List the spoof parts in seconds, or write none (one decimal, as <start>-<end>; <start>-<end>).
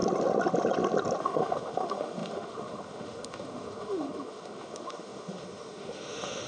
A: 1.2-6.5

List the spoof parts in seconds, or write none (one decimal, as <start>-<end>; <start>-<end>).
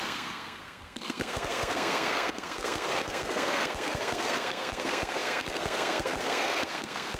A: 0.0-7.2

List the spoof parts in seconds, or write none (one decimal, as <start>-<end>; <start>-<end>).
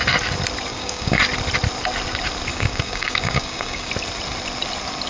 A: 0.7-1.2; 2.5-3.9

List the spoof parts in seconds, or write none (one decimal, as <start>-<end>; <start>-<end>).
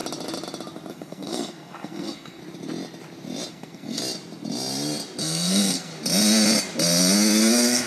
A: 0.9-2.4; 3.5-4.0; 5.2-5.9; 7.4-7.9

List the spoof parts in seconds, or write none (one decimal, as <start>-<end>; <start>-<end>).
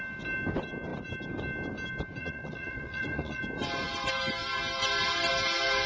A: 2.2-3.4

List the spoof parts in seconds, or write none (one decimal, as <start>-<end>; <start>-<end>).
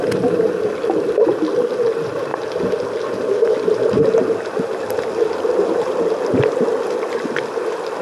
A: none